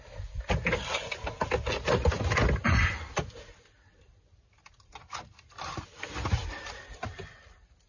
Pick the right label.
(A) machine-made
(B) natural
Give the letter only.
B